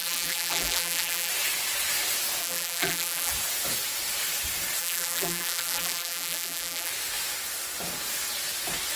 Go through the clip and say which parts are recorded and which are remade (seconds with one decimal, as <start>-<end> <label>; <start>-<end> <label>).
0.0-1.3 remade; 1.3-2.4 recorded; 2.4-3.3 remade; 3.3-4.8 recorded; 4.8-6.9 remade; 6.9-9.0 recorded